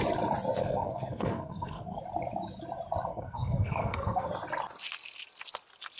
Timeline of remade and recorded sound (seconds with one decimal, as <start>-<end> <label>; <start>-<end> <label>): 0.0-0.6 recorded; 0.6-2.0 remade; 2.0-3.1 recorded; 3.1-4.3 remade; 4.3-6.0 recorded